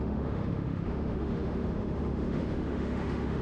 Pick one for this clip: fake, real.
fake